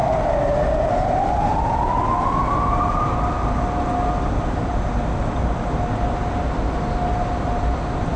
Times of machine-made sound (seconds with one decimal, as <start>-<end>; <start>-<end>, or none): none